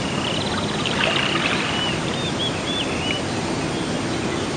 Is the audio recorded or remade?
recorded